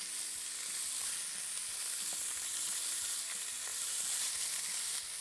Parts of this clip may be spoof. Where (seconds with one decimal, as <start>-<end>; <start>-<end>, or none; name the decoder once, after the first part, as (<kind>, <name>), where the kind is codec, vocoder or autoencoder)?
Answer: 3.7-4.3 (vocoder, BigVGAN v2)